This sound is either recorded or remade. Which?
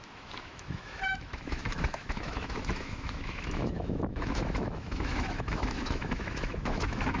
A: remade